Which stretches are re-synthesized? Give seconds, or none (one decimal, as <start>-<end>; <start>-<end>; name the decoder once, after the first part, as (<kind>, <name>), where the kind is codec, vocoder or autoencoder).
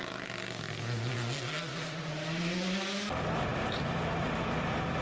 none